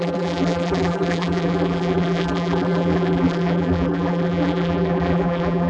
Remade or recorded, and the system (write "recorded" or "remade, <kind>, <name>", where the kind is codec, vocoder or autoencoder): remade, vocoder, BigVGAN v2